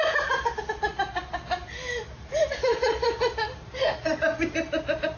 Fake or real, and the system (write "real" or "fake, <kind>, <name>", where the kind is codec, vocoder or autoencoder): fake, vocoder, BigVGAN v2